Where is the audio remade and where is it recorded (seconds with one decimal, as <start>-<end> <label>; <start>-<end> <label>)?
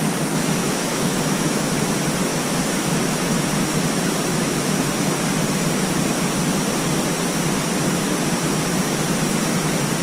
0.0-0.6 recorded; 0.6-1.7 remade; 1.7-2.3 recorded; 2.3-3.0 remade; 3.0-4.3 recorded; 4.3-4.9 remade; 4.9-10.0 recorded